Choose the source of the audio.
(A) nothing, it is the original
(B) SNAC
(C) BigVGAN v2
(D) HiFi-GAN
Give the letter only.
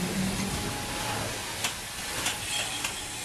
A